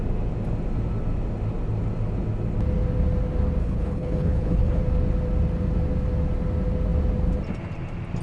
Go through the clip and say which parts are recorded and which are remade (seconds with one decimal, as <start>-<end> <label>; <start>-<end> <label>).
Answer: 0.0-3.6 recorded; 3.6-4.8 remade; 4.8-8.2 recorded